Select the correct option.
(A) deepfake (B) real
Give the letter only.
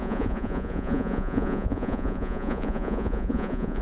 A